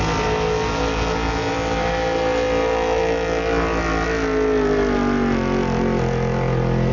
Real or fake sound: real